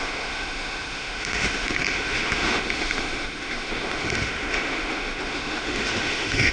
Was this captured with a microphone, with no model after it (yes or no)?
no